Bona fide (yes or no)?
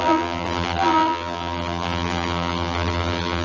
no